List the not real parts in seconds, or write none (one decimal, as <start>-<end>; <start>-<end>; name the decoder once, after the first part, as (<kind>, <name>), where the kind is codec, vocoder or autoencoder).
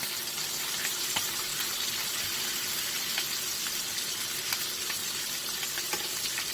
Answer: none